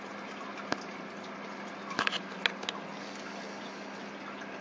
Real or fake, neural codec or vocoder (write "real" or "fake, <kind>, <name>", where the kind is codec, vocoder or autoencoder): real